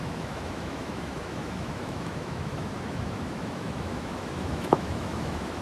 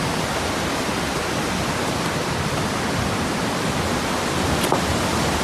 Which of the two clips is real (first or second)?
second